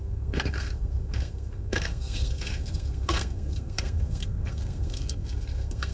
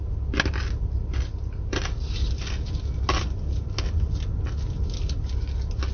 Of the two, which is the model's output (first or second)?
first